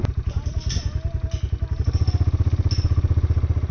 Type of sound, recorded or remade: recorded